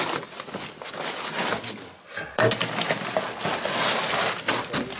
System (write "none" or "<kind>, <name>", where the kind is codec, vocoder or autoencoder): none